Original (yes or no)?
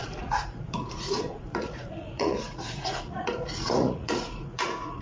no